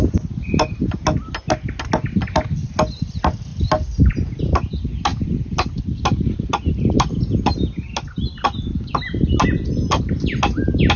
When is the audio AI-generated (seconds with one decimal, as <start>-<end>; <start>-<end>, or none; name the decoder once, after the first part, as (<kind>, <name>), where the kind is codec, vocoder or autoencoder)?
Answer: none